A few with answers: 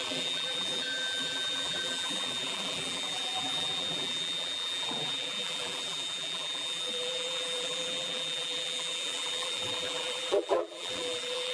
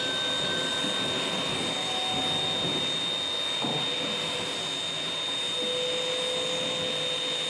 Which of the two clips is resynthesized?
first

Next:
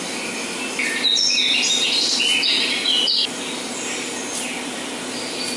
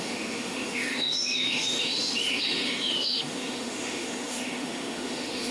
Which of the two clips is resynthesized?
second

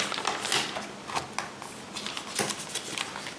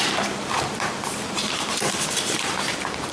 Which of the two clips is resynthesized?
second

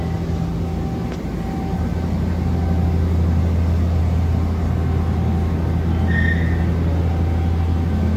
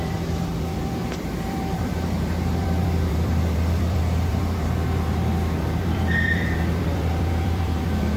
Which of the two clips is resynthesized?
second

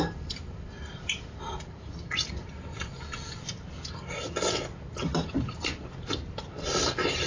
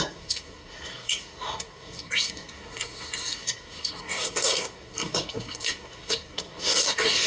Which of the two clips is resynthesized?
second